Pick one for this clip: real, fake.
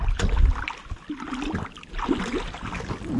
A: real